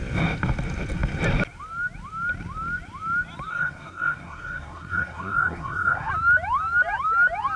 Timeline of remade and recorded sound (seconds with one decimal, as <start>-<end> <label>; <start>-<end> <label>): 0.0-3.5 recorded; 3.5-6.1 remade; 6.1-7.6 recorded